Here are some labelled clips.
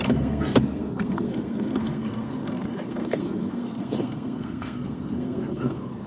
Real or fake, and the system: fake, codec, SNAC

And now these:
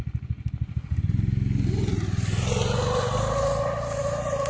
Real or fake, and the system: real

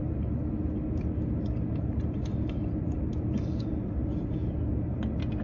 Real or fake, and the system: real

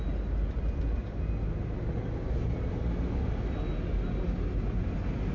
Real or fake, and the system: real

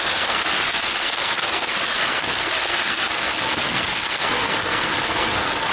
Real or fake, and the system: fake, codec, SNAC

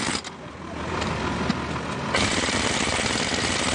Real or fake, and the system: real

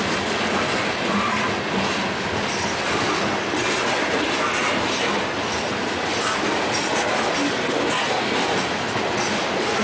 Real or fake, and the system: real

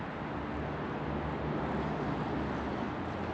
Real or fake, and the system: real